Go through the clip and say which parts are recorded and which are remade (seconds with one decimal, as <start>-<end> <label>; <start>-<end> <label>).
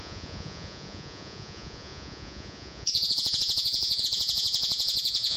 0.0-5.4 remade